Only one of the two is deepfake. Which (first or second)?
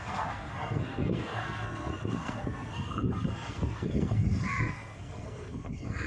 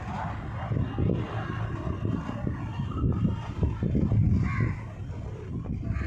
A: first